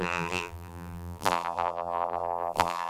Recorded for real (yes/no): no